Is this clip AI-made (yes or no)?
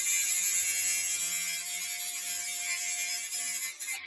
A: no